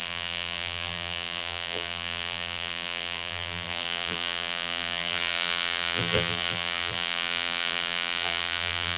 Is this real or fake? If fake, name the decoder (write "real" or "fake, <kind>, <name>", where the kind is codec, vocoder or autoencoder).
fake, vocoder, BigVGAN v2